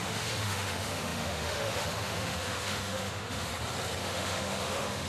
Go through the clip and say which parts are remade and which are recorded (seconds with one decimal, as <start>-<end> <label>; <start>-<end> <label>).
0.0-3.5 remade; 3.5-4.0 recorded; 4.0-5.1 remade